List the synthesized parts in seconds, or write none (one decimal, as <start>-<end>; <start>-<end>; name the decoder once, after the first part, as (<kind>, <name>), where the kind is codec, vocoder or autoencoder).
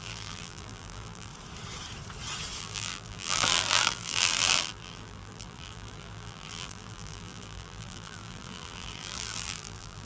0.0-1.3 (vocoder, BigVGAN v2); 2.6-10.1